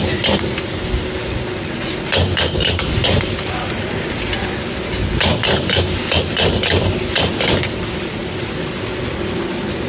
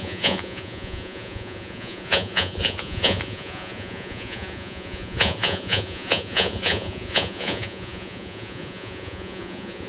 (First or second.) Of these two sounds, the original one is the first